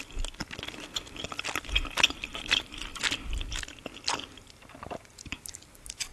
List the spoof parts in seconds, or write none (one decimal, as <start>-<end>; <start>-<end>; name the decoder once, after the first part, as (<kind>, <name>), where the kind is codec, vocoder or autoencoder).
2.3-3.0 (vocoder, BigVGAN v2)